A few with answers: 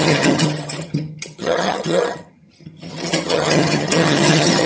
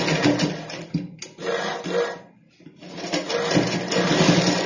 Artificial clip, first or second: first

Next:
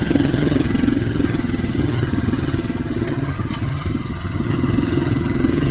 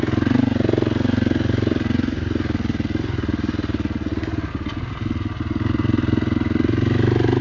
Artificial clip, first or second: first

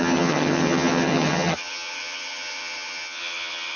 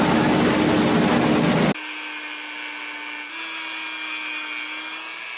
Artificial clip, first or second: first